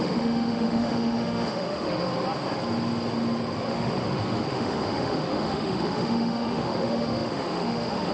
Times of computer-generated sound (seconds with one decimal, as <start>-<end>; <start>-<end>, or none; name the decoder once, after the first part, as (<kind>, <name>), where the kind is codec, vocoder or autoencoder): 0.0-2.1 (autoencoder, DAC-VAE); 3.7-8.1